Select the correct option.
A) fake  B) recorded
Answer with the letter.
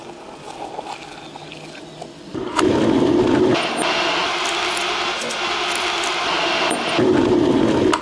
B